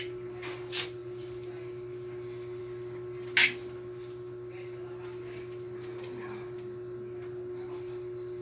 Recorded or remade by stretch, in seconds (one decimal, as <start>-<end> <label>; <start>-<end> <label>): 0.0-8.4 recorded